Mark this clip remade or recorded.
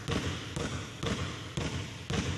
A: recorded